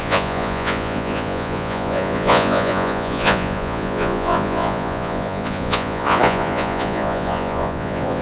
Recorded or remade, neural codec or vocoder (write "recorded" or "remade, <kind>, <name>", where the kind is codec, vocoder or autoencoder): remade, vocoder, Vocos